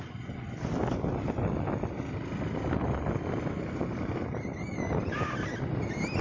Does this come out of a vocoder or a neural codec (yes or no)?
no